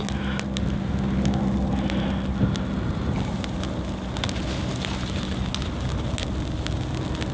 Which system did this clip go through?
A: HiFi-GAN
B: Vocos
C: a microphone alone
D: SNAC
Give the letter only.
C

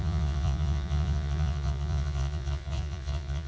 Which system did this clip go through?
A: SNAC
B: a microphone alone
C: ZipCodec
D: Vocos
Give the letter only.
D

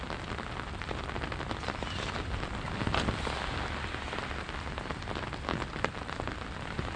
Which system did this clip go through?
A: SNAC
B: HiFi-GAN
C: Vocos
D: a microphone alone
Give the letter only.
D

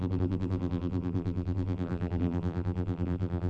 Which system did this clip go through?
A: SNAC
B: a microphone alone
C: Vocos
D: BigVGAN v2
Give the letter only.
D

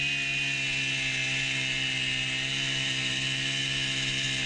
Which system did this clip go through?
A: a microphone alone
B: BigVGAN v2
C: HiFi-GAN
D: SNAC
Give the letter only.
A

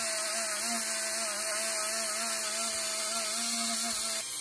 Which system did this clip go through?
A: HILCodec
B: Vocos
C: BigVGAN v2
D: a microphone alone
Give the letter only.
D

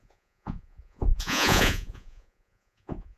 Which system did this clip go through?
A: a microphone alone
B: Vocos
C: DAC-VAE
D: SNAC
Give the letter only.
B